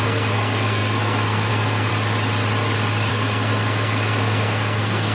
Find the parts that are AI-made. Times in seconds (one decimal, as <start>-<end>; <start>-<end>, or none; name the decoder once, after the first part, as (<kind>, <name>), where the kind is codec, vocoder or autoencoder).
0.0-1.9 (codec, SNAC); 3.1-5.1